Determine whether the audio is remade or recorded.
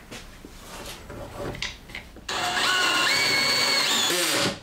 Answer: recorded